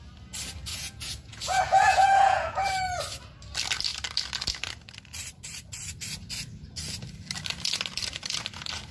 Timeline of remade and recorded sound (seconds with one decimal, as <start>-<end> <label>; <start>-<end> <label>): 0.0-0.7 recorded; 0.7-2.7 remade; 2.7-8.9 recorded